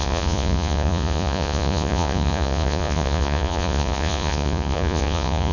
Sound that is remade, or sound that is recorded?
remade